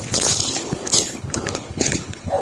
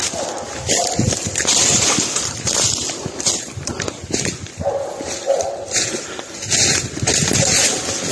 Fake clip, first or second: first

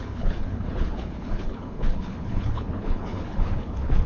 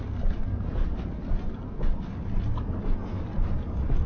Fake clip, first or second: first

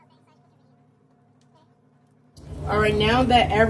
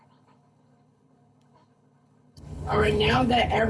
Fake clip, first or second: second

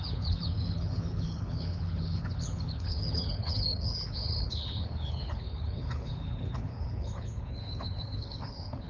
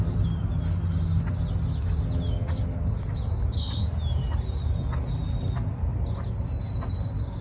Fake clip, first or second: first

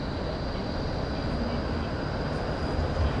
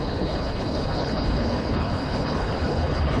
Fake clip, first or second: second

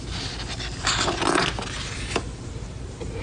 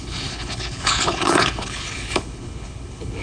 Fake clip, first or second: second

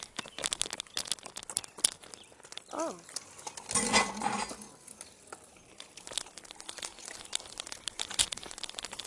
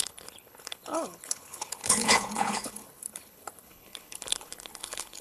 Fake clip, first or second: second